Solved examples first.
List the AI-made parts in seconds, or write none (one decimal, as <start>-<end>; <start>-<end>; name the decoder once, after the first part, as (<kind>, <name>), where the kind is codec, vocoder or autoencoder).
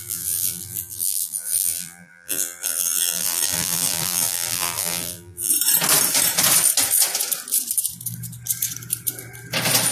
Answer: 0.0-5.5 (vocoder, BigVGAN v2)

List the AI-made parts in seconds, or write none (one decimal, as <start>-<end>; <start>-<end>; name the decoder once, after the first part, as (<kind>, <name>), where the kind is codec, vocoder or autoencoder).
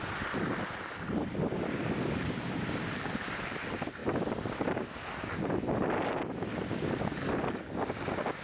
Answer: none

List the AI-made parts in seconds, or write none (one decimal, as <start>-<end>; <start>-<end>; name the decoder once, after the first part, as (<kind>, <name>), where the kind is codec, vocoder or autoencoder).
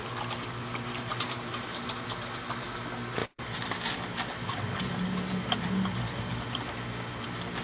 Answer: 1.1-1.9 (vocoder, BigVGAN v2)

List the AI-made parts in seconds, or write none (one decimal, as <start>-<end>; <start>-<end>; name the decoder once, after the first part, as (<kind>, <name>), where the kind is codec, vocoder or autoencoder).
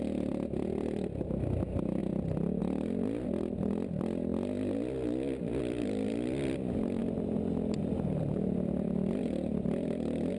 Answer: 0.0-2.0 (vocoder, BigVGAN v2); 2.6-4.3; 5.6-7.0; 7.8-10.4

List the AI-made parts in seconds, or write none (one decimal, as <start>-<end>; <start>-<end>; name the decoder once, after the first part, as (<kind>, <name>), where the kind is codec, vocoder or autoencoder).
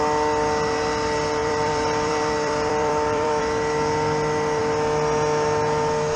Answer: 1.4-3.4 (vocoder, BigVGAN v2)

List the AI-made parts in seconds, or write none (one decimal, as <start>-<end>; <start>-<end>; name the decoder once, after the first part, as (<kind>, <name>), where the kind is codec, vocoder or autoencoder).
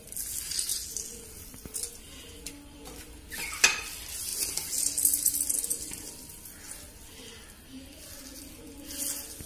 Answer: none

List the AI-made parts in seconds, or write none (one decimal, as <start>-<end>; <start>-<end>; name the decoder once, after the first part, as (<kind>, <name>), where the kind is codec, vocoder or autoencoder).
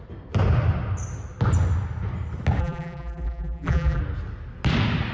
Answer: 2.6-4.0 (vocoder, BigVGAN v2)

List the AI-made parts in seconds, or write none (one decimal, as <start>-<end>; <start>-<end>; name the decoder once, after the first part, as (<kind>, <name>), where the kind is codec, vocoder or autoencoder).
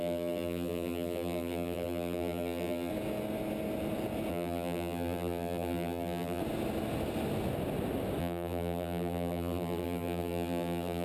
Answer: 0.0-2.9 (vocoder, BigVGAN v2); 4.3-6.4; 8.2-11.0